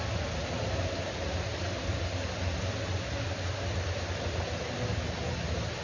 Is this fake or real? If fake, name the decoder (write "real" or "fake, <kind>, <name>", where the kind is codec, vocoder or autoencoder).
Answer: real